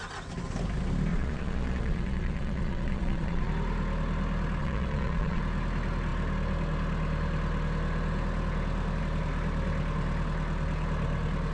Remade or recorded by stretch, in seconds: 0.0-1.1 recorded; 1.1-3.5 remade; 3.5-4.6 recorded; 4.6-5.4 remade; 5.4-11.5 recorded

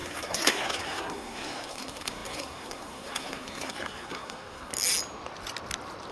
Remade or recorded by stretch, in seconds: 0.0-4.7 remade; 4.7-6.1 recorded

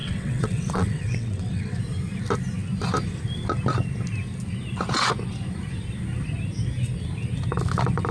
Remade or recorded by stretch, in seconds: 0.0-1.8 remade; 1.8-8.1 recorded

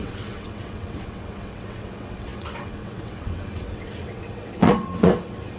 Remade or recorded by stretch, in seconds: 0.0-5.6 remade

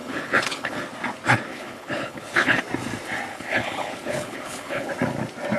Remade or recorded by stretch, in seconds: 0.0-0.8 remade; 0.8-1.5 recorded; 1.5-2.6 remade; 2.6-3.3 recorded; 3.3-4.9 remade; 4.9-5.6 recorded

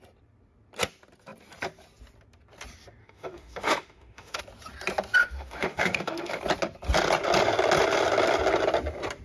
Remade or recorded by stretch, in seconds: 0.0-3.0 recorded; 3.0-4.4 remade; 4.4-5.2 recorded; 5.2-6.4 remade; 6.4-9.2 recorded

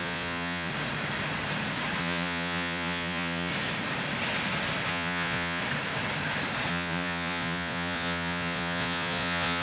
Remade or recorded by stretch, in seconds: 0.0-0.7 remade; 0.7-2.0 recorded; 2.0-3.5 remade; 3.5-4.9 recorded; 4.9-5.6 remade; 5.6-6.7 recorded; 6.7-9.6 remade